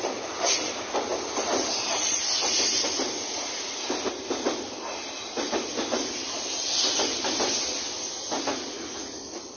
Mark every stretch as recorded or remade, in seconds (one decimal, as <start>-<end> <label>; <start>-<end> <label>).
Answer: 0.0-9.6 recorded